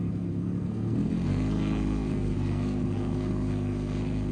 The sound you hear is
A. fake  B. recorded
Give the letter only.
A